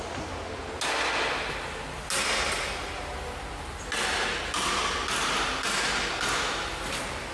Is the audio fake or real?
real